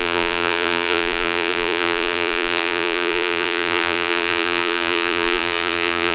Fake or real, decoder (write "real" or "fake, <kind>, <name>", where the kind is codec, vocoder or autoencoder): fake, vocoder, BigVGAN v2